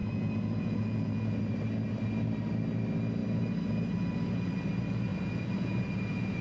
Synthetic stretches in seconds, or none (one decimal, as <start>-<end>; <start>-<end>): 0.0-1.4; 5.1-6.4